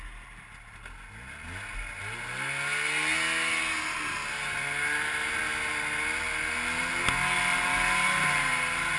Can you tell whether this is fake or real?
real